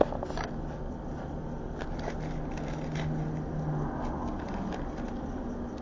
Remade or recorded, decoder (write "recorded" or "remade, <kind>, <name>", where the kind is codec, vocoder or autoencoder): recorded